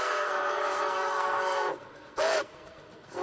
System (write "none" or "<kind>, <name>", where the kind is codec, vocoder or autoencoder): codec, SNAC